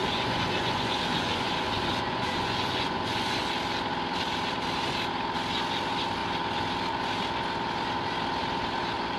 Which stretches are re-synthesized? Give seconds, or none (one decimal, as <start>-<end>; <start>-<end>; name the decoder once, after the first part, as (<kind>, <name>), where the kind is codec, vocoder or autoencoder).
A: 0.0-3.5 (vocoder, Vocos)